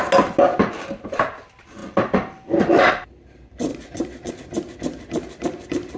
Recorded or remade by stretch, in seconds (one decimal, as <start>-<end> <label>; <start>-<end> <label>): 0.0-3.7 recorded; 3.7-4.3 remade; 4.3-6.0 recorded